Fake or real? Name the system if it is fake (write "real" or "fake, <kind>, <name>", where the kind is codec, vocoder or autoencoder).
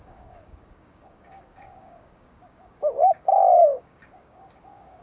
fake, codec, DAC